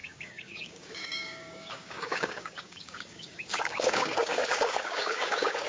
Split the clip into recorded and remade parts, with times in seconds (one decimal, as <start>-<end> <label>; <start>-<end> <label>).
0.0-5.7 remade